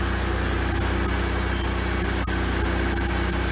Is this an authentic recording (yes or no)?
yes